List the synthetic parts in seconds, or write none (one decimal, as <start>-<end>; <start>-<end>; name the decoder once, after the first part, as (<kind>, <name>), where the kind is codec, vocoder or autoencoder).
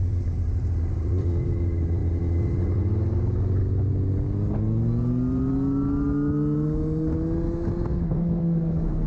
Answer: 7.9-9.1 (codec, SNAC)